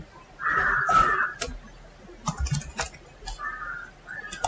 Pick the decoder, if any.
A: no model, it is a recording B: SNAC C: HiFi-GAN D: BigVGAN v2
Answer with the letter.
A